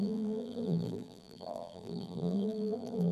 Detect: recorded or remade remade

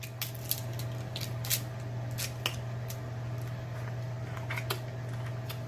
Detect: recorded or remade recorded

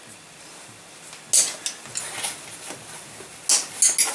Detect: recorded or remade recorded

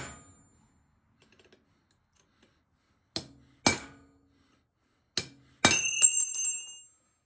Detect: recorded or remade recorded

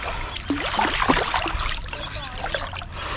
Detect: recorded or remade recorded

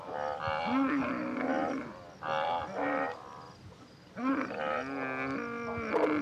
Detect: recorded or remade recorded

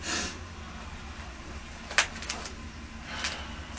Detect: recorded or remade recorded